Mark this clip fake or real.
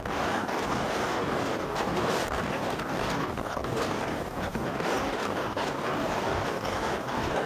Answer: fake